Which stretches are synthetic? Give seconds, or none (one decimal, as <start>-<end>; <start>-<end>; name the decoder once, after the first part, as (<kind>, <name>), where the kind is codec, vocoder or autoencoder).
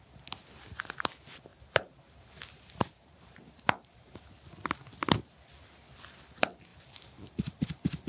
1.5-4.2 (vocoder, BigVGAN v2); 6.7-8.1